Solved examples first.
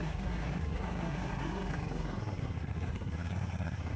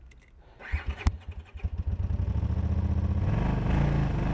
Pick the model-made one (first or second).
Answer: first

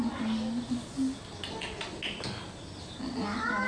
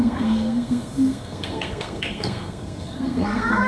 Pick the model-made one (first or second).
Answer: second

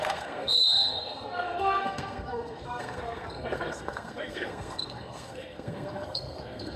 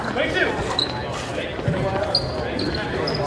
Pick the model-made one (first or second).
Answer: first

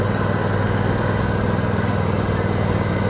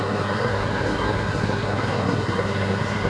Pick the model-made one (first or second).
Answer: second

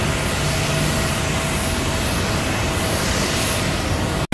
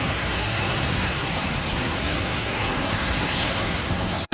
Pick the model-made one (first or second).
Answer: second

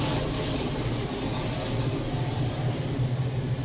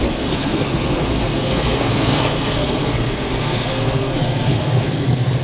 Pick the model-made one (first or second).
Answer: second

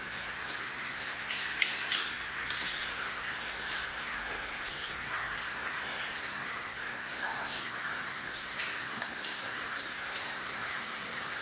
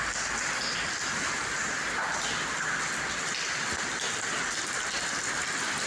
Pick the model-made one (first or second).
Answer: first